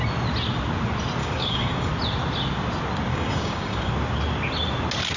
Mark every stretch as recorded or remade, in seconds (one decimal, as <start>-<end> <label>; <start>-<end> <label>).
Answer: 0.0-1.2 recorded; 1.2-1.9 remade; 1.9-3.1 recorded; 3.1-3.9 remade; 3.9-5.2 recorded

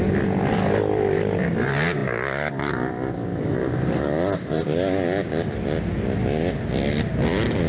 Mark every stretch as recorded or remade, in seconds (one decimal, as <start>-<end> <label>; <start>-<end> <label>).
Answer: 0.0-7.7 recorded

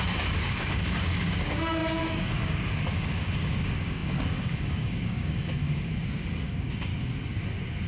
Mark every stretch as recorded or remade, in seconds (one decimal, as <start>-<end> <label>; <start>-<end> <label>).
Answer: 0.0-5.9 remade; 5.9-6.4 recorded; 6.4-6.9 remade; 6.9-7.9 recorded

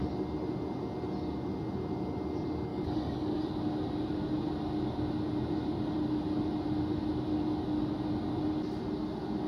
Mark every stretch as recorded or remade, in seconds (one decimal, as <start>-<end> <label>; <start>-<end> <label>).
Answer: 0.0-2.7 recorded; 2.7-3.4 remade; 3.4-9.5 recorded

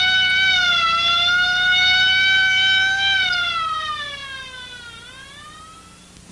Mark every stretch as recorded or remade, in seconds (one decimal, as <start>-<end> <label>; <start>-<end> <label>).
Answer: 0.0-6.3 recorded